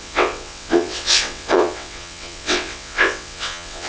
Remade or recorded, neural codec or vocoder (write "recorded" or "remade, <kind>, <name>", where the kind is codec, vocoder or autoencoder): remade, vocoder, WaveNeXt